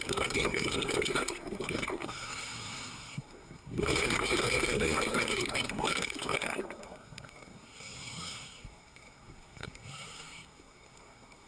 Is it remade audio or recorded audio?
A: remade